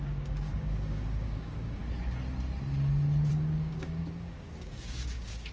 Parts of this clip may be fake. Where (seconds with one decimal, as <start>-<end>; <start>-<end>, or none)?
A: 0.0-1.8; 3.3-5.5